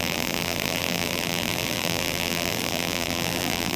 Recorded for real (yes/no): no